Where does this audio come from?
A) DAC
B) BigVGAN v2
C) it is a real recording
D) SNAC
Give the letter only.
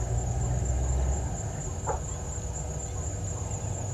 C